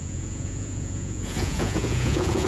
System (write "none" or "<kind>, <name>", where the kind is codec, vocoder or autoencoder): vocoder, Vocos